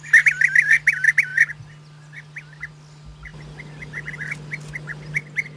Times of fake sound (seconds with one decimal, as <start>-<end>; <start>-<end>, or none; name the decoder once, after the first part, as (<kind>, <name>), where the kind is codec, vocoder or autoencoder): none